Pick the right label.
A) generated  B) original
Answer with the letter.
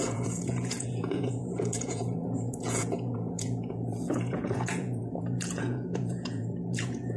A